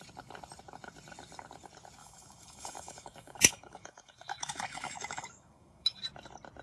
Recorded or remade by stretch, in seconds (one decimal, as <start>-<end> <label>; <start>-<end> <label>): 0.0-2.0 recorded; 2.0-6.0 remade; 6.0-6.6 recorded